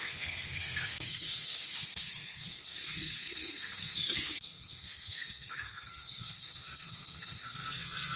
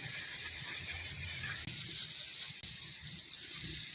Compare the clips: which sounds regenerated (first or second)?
first